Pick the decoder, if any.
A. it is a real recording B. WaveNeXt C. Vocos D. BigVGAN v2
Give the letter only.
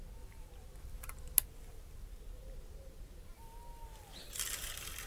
A